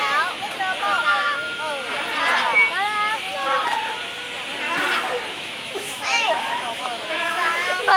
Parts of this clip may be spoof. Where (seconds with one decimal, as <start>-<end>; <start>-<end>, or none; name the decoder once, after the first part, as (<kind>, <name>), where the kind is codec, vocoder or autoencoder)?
1.1-1.7 (autoencoder, DAC-VAE); 5.3-8.0